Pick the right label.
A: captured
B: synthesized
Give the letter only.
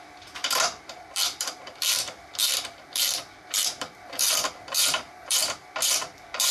B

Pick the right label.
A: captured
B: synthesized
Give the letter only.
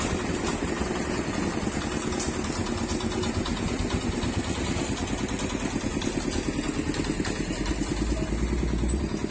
A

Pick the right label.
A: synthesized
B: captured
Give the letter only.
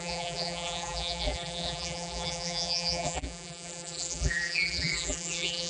A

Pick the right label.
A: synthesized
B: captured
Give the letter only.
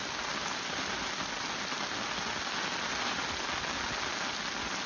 B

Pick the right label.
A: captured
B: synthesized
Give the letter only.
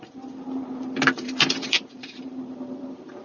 B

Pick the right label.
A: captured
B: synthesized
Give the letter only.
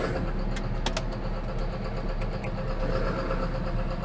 A